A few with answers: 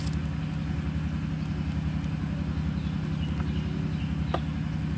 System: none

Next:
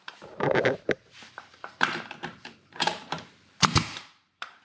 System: vocoder, BigVGAN v2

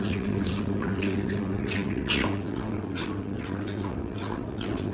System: vocoder, WaveNeXt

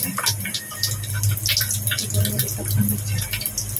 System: none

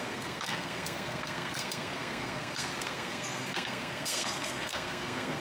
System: codec, SNAC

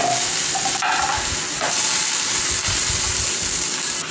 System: none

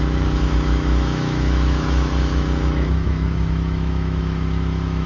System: autoencoder, DAC-VAE